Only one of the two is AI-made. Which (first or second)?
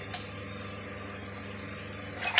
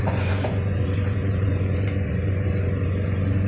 second